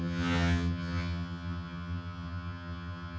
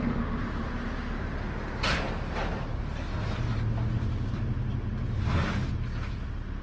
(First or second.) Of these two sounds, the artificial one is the first